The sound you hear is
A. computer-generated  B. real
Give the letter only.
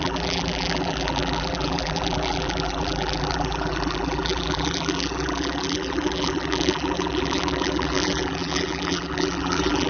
A